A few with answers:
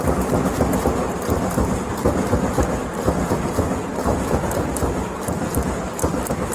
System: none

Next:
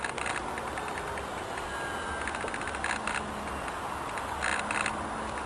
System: none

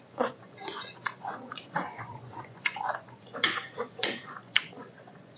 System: vocoder, Vocos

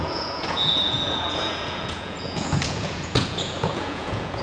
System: vocoder, Vocos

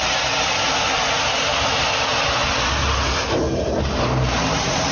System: none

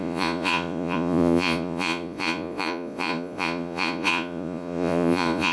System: vocoder, Vocos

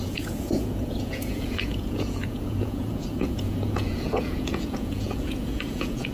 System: vocoder, Vocos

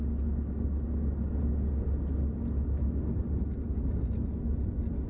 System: none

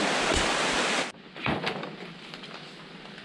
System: none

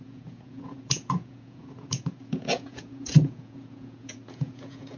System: vocoder, Vocos